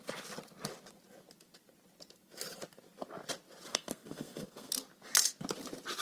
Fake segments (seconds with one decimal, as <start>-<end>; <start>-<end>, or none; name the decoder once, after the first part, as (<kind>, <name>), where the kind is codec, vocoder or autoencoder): 3.7-4.7 (codec, SNAC)